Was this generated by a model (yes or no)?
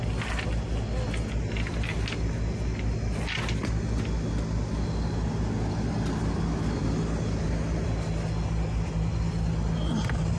no